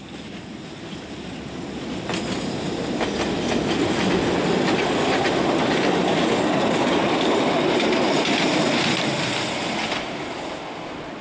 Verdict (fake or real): real